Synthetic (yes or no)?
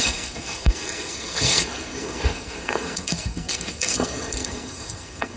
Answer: yes